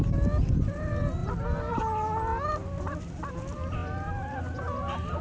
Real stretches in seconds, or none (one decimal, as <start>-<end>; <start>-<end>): 0.0-5.2